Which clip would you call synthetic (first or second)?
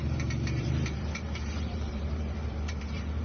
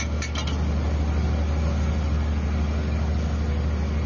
first